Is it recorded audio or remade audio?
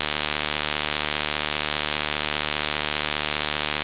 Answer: recorded